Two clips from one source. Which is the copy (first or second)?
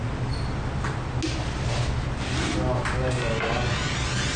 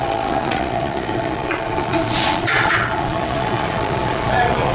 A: second